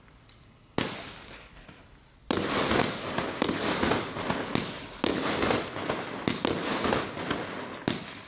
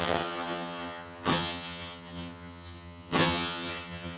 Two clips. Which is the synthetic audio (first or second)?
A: second